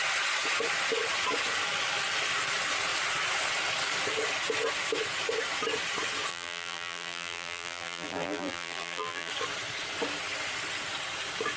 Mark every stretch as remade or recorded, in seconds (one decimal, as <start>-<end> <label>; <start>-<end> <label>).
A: 0.0-6.3 recorded; 6.3-9.3 remade; 9.3-11.6 recorded